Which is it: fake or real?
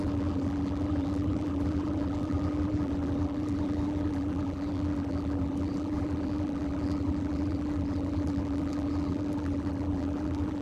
fake